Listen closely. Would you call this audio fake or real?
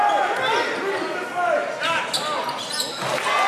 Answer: real